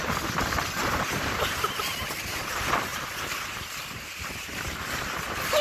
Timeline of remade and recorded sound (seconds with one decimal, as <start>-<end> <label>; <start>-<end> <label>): 0.0-0.8 recorded; 0.8-2.1 remade; 2.1-2.9 recorded; 2.9-3.4 remade; 3.4-5.6 recorded